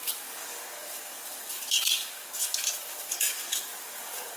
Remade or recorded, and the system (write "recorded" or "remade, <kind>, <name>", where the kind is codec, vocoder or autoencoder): remade, codec, DAC